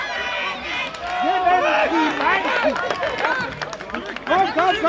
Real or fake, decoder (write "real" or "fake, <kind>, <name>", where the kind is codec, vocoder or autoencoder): real